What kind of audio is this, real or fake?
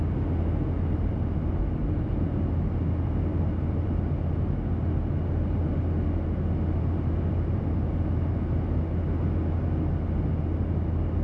real